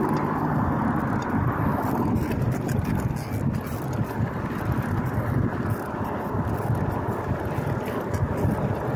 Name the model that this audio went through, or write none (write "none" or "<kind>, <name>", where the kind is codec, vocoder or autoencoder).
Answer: none